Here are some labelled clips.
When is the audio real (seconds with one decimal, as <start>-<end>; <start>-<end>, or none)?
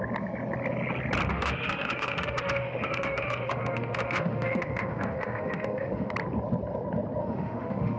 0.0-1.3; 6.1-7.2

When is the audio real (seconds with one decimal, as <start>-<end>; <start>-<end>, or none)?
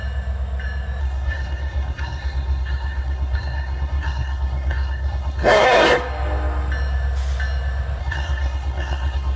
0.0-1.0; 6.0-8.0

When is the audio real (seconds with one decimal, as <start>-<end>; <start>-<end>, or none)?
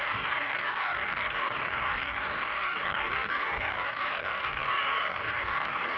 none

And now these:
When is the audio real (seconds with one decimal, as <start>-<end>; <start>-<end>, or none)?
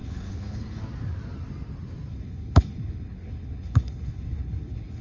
0.8-2.1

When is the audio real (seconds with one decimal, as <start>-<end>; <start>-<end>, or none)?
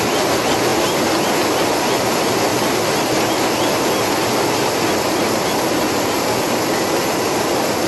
0.0-7.9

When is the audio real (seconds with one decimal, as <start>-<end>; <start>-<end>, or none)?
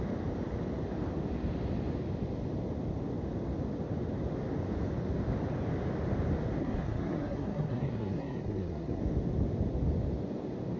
0.0-6.6; 9.0-10.8